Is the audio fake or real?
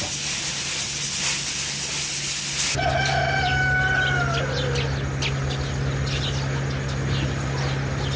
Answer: real